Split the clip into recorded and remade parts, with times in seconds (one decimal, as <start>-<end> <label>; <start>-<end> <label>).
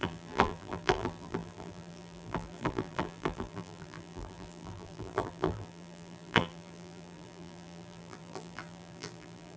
0.0-9.6 remade